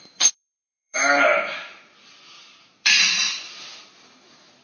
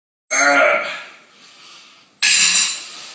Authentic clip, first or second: second